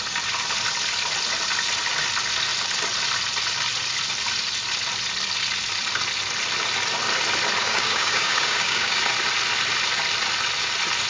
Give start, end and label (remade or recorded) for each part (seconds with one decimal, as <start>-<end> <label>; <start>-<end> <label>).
0.0-7.6 recorded; 7.6-9.0 remade; 9.0-11.1 recorded